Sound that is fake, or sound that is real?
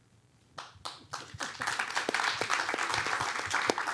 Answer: real